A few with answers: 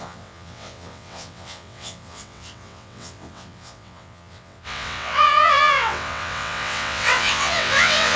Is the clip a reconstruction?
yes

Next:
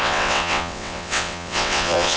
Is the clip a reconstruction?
yes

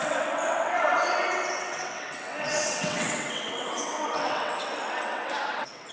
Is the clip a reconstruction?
yes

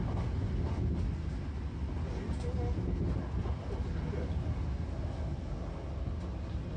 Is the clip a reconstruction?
no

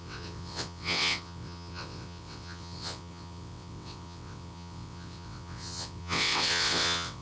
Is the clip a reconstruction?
yes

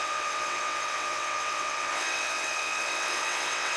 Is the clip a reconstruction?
yes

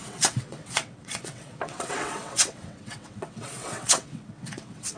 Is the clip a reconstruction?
yes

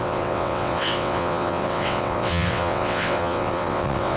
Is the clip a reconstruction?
yes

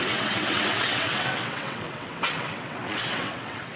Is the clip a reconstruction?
yes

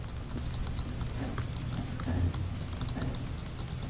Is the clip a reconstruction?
no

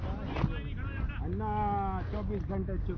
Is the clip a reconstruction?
no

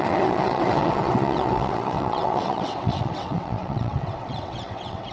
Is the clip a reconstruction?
yes